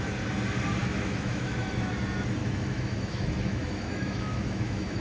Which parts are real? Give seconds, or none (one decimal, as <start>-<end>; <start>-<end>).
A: 0.0-0.8; 1.9-2.4